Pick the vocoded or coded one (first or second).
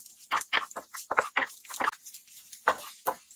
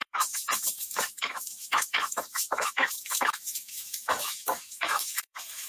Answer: second